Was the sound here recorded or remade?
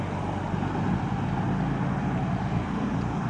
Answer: recorded